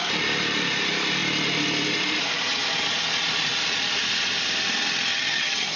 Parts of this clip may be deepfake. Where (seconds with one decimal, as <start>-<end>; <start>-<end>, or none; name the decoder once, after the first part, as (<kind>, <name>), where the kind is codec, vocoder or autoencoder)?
5.1-5.8 (vocoder, HiFi-GAN)

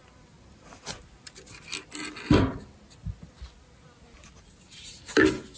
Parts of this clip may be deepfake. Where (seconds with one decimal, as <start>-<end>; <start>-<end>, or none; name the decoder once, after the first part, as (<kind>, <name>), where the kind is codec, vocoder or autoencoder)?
none

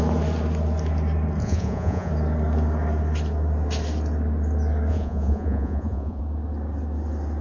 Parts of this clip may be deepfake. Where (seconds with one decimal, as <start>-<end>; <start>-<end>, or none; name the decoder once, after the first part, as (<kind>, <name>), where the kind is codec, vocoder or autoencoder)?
1.4-2.1 (vocoder, Vocos); 4.9-6.2

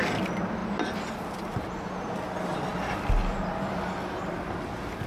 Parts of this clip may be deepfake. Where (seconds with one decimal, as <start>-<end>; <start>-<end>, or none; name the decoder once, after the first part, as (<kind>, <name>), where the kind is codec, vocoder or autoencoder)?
none